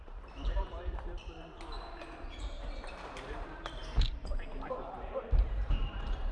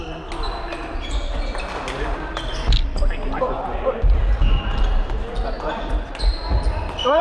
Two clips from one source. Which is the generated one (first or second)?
first